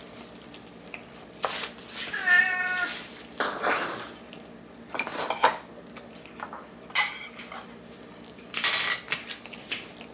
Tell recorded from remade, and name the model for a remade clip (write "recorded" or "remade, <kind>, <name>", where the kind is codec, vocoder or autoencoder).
recorded